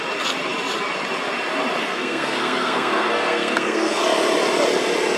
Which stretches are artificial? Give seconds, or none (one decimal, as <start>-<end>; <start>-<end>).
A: 1.8-4.0